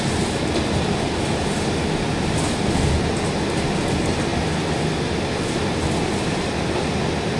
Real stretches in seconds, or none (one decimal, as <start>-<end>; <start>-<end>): 0.0-7.4